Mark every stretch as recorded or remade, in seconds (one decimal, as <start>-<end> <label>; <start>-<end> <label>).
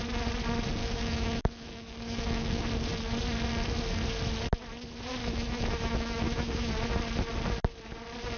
0.0-0.8 recorded; 0.8-2.6 remade; 2.6-5.2 recorded; 5.2-6.7 remade; 6.7-8.4 recorded